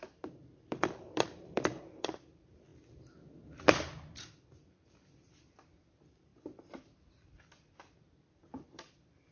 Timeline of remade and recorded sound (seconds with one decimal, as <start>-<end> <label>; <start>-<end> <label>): 0.0-2.7 remade; 2.7-3.6 recorded; 3.6-9.3 remade